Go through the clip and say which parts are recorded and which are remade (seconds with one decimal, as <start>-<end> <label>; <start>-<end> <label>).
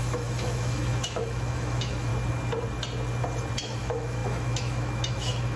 0.0-2.1 remade; 2.1-3.6 recorded; 3.6-5.6 remade